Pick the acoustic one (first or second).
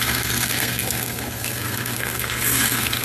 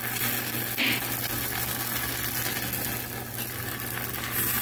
second